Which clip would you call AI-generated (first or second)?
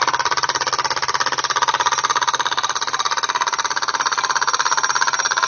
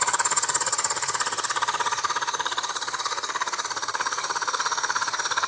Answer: second